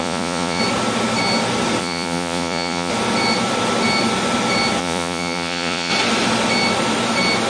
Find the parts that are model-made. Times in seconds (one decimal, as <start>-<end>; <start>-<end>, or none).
0.0-0.6; 1.8-2.9; 4.8-5.9